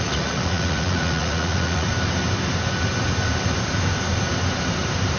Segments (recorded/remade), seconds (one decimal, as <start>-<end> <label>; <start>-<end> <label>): 0.0-1.9 remade; 1.9-5.2 recorded